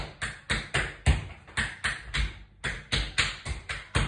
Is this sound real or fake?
real